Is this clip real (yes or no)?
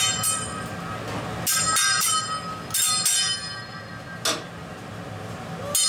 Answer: yes